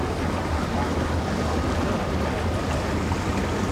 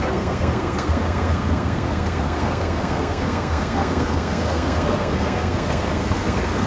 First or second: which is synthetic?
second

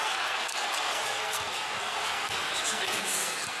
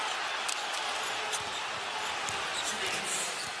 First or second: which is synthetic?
first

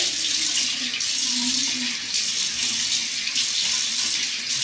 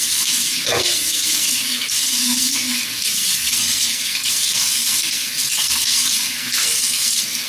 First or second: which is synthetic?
second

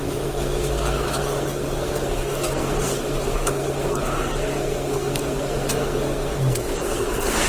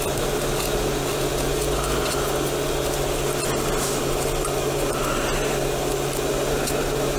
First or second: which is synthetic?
first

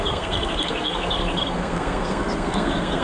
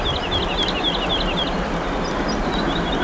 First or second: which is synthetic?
first